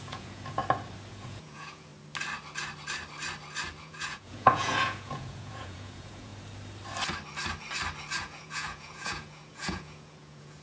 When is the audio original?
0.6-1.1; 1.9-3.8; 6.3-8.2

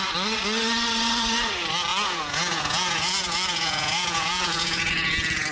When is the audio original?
0.0-1.9; 4.9-5.5

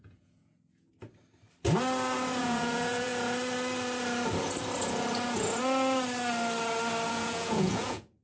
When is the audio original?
0.9-2.4; 3.1-7.1

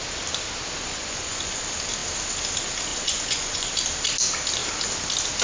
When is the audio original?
0.0-0.9; 1.6-2.9; 3.7-5.4

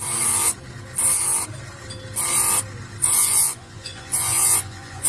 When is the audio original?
0.0-3.2

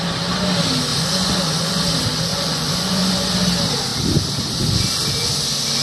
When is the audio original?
0.0-0.9; 1.8-2.3; 3.3-5.8

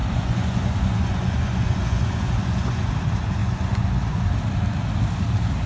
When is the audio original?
2.9-3.4; 4.2-5.7

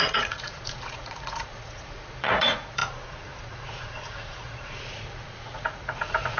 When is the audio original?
none